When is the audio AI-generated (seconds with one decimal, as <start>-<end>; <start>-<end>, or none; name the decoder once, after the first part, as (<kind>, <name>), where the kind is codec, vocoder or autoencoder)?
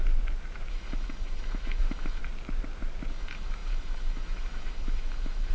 0.7-2.2 (autoencoder, DAC-VAE); 3.1-5.5